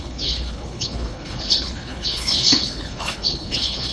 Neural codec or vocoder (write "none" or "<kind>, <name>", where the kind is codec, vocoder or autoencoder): codec, HILCodec